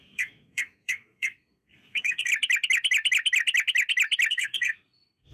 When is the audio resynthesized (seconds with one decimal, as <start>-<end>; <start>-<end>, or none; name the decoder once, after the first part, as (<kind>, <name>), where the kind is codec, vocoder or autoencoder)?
0.0-2.3 (codec, SNAC); 4.3-5.3